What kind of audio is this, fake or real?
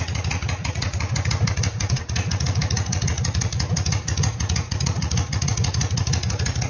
fake